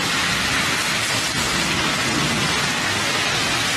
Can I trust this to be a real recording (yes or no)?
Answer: yes